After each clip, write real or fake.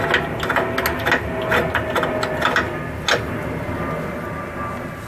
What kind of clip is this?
real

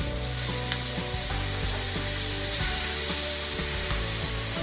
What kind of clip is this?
fake